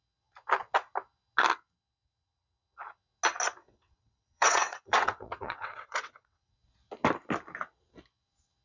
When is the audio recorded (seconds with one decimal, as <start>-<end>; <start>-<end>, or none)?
0.0-3.6; 6.5-8.6